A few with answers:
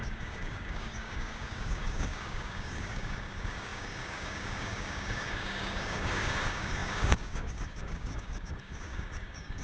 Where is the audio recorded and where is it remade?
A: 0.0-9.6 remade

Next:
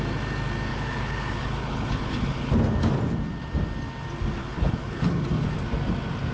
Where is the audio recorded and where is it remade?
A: 0.0-0.7 recorded; 0.7-2.5 remade; 2.5-4.4 recorded; 4.4-5.5 remade; 5.5-6.3 recorded

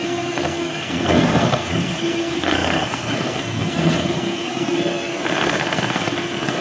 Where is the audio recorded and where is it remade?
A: 0.0-6.6 remade

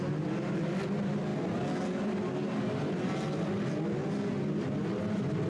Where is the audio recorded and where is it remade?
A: 0.0-5.5 recorded